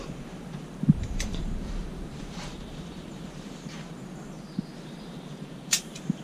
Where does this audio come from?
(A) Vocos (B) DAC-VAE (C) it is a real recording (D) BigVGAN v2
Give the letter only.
D